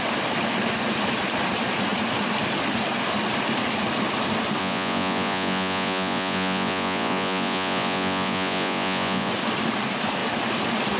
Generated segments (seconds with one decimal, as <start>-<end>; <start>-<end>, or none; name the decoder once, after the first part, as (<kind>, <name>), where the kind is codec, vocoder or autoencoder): 4.6-9.3 (vocoder, Vocos)